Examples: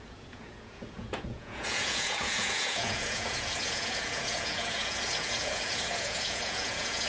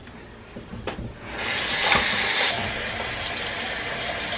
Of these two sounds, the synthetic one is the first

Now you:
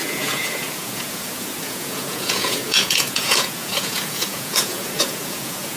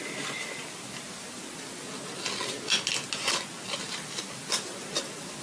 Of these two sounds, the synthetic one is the first